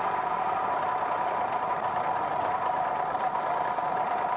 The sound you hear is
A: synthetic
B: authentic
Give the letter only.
B